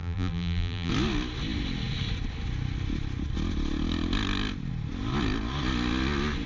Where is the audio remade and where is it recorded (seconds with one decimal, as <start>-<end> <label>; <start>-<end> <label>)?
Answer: 0.0-0.9 remade; 0.9-6.5 recorded